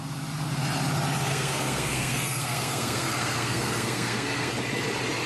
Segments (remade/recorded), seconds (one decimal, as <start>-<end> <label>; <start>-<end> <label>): 0.0-1.3 recorded; 1.3-4.5 remade; 4.5-5.3 recorded